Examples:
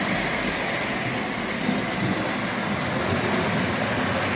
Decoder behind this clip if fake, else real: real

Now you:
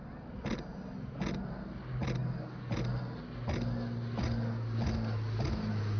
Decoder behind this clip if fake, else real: real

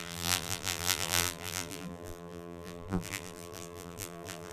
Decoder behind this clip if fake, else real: fake, vocoder, BigVGAN v2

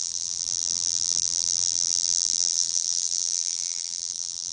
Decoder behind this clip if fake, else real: fake, vocoder, BigVGAN v2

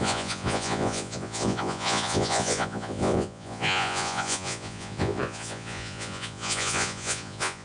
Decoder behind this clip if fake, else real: fake, vocoder, Vocos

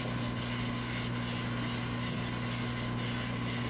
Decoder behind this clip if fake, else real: real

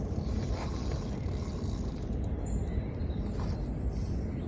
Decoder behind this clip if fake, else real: real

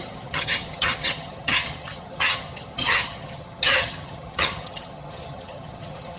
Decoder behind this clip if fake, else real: fake, vocoder, HiFi-GAN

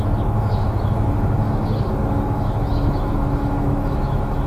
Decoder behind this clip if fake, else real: fake, autoencoder, DAC-VAE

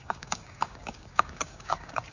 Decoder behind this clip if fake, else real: fake, codec, DAC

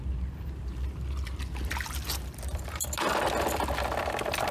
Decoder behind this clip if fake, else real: real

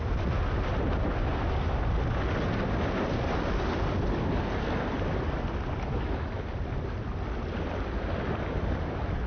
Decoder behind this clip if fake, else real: real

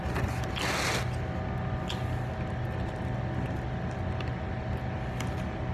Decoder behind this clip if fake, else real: real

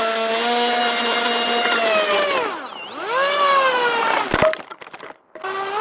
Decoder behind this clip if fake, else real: real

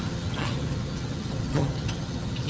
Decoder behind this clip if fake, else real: fake, vocoder, HiFi-GAN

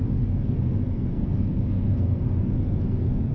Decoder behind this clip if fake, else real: fake, codec, SNAC